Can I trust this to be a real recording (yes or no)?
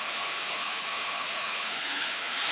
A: no